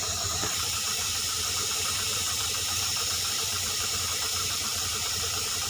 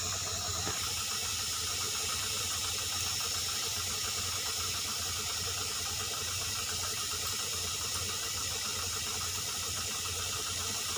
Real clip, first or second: second